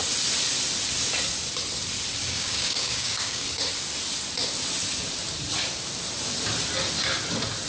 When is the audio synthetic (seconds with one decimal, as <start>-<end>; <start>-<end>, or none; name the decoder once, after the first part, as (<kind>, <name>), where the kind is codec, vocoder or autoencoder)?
2.2-3.6 (codec, DAC)